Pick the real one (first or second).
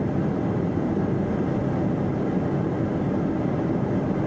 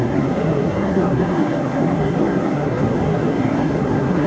first